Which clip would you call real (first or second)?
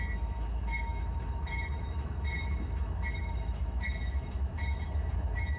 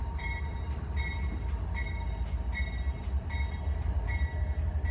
second